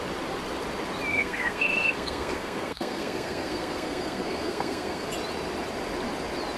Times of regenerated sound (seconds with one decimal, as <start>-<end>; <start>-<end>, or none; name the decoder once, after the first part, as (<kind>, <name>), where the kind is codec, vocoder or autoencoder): 1.1-5.1 (codec, SNAC)